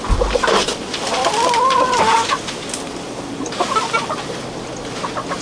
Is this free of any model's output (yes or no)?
yes